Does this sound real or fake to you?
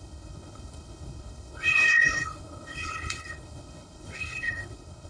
fake